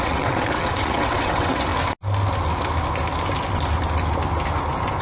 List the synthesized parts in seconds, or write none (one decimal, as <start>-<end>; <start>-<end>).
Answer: 0.0-1.7